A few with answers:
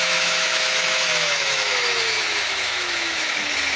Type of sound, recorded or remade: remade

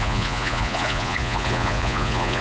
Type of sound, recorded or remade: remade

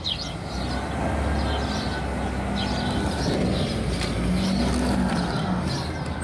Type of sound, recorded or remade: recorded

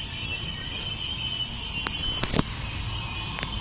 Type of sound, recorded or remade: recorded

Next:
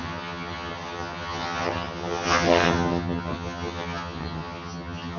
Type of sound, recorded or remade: remade